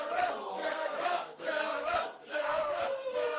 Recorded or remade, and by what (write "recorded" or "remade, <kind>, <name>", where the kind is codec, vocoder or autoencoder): remade, codec, SNAC